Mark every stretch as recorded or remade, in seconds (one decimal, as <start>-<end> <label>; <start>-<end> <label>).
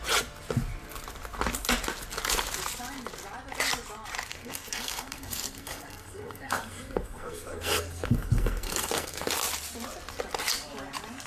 0.0-4.3 recorded; 4.3-9.3 remade; 9.3-11.3 recorded